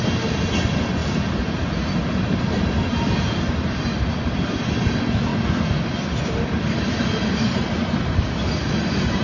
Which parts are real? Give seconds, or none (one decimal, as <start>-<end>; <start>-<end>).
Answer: 0.0-5.3; 8.2-9.2